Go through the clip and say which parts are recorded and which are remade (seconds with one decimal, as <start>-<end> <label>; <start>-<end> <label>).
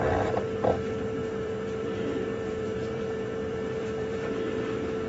0.0-1.2 recorded; 1.2-4.3 remade; 4.3-5.1 recorded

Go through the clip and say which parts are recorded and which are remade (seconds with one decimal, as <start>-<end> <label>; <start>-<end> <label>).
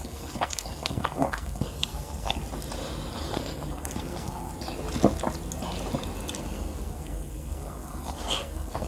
0.0-2.4 remade; 2.4-3.2 recorded; 3.2-4.5 remade; 4.5-6.4 recorded; 6.4-8.9 remade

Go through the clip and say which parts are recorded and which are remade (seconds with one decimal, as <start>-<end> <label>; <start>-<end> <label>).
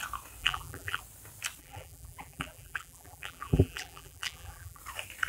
0.0-0.4 recorded; 0.4-1.0 remade; 1.0-1.6 recorded; 1.6-4.8 remade; 4.8-5.3 recorded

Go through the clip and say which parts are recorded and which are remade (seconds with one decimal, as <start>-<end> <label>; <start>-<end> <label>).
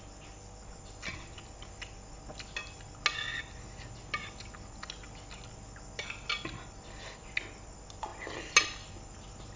0.0-9.6 recorded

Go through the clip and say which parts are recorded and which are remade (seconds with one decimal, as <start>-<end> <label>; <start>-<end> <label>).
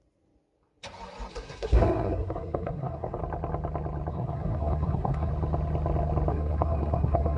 0.0-1.3 recorded; 1.3-3.2 remade; 3.2-4.1 recorded; 4.1-5.3 remade; 5.3-6.3 recorded; 6.3-7.4 remade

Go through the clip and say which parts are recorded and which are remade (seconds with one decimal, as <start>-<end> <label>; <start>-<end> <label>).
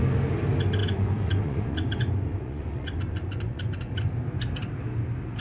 0.0-0.8 recorded; 0.8-4.0 remade; 4.0-5.4 recorded